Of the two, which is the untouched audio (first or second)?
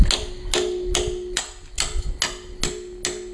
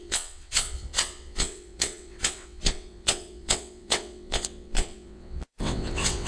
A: first